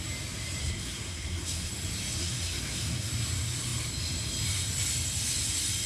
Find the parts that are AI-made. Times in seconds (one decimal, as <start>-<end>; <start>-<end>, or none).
0.6-1.7; 2.2-3.1